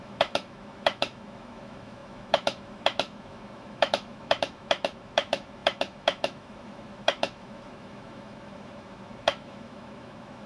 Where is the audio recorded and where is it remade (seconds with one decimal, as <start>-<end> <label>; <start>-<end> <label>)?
0.0-10.5 remade